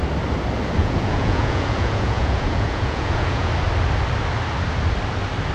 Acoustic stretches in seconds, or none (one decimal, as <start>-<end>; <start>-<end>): 0.0-0.8; 3.5-5.5